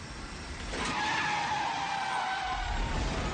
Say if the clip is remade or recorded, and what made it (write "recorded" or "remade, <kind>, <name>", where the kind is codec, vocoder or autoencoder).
recorded